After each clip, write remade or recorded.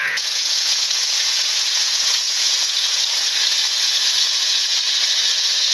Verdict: remade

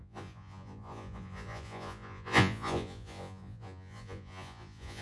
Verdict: remade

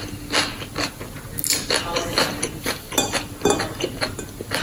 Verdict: recorded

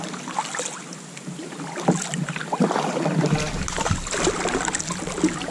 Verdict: recorded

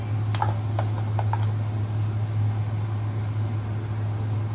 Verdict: recorded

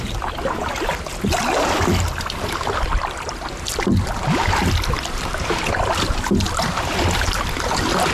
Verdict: recorded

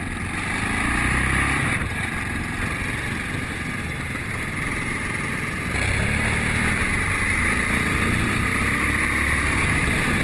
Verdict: remade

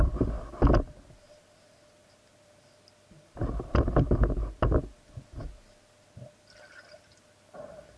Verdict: recorded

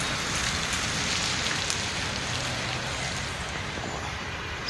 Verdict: recorded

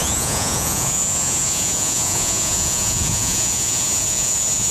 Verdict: remade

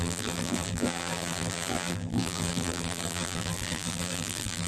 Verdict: remade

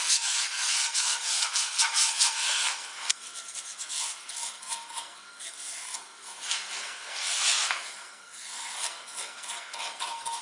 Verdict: remade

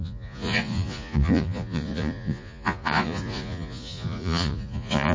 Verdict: remade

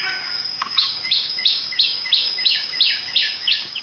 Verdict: remade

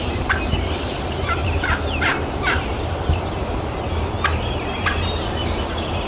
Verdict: remade